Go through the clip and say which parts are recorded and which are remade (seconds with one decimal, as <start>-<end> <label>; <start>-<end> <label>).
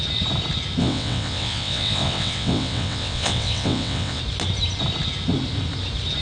0.0-0.8 recorded; 0.8-4.2 remade; 4.2-6.2 recorded